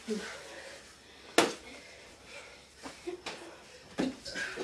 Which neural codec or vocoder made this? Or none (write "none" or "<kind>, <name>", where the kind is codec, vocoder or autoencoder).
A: none